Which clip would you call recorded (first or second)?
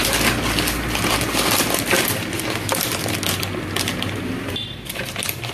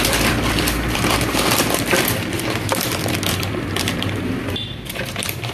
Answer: first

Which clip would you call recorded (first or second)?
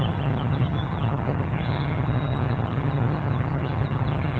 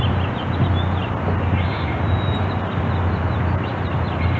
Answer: second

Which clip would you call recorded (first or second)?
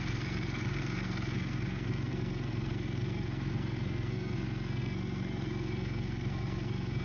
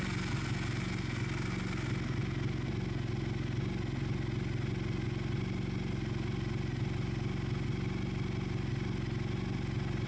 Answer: second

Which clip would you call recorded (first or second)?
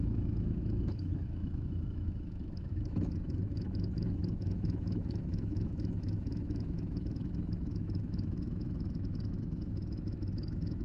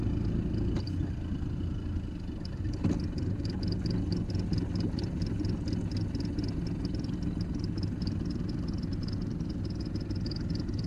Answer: second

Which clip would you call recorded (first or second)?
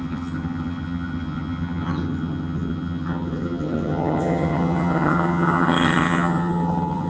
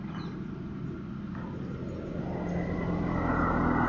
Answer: second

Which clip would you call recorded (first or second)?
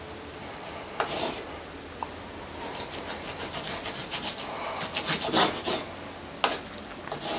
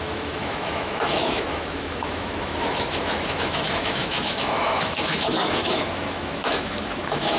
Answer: first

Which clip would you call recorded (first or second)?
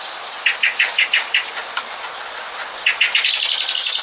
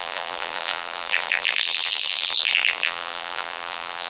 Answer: first